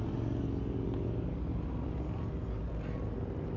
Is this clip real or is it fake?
real